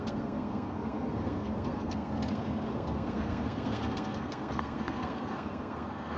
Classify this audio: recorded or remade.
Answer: remade